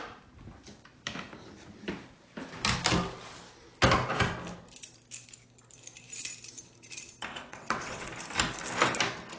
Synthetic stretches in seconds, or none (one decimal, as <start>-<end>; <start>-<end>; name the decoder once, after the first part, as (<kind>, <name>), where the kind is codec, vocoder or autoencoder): 7.3-8.1 (vocoder, WaveNeXt)